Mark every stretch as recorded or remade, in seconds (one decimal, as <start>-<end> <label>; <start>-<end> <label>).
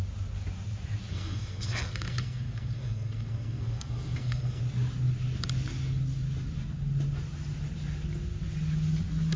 0.0-1.1 recorded; 1.1-4.6 remade; 4.6-9.4 recorded